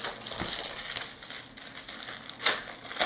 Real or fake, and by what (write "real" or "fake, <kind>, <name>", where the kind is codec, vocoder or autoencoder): real